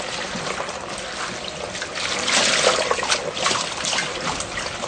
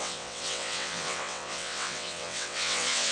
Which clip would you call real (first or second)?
first